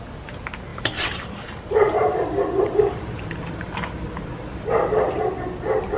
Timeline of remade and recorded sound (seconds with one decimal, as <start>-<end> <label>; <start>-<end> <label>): 0.0-0.7 recorded; 0.7-4.0 remade; 4.0-6.0 recorded